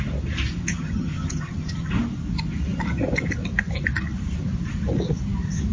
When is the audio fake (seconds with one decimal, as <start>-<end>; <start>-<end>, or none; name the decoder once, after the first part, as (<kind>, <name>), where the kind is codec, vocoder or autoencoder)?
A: 0.7-1.9 (vocoder, HiFi-GAN)